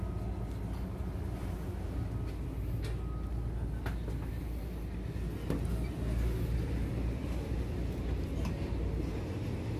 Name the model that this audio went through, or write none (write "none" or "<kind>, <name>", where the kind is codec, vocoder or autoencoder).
none